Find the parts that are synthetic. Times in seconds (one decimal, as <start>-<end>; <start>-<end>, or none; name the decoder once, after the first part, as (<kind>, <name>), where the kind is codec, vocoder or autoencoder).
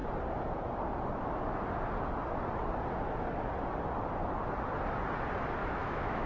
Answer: 5.6-6.3 (autoencoder, DAC-VAE)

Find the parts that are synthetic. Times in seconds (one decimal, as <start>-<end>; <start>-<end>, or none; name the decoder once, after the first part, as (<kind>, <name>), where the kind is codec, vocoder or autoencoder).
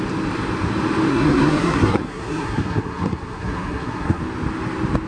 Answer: 1.1-4.2 (codec, SNAC)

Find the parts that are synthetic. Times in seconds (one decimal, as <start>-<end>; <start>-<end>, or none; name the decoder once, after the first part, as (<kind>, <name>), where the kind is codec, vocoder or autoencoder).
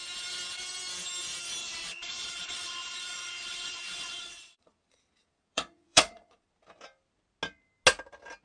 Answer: 1.6-6.5 (vocoder, Vocos)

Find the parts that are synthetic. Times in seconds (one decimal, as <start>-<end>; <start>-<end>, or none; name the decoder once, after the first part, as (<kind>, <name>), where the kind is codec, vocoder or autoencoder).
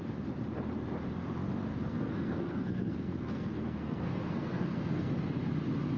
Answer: 1.7-5.1 (codec, SNAC)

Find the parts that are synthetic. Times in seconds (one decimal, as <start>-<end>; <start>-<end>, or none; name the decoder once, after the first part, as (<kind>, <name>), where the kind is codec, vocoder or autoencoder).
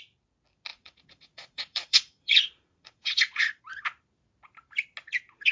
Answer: 0.7-3.6 (vocoder, Vocos)